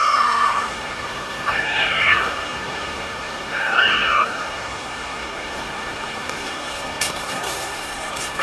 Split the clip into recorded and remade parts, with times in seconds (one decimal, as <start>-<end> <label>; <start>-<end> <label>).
0.0-8.4 remade